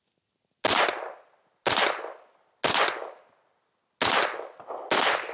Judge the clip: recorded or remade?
recorded